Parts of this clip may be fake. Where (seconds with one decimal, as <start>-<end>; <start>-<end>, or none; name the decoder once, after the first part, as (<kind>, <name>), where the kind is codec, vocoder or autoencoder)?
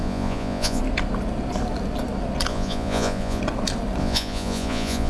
0.0-0.8 (vocoder, Vocos); 2.5-3.4; 4.0-5.1